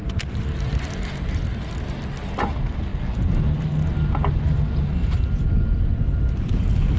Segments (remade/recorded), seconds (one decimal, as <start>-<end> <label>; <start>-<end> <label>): 0.0-7.0 recorded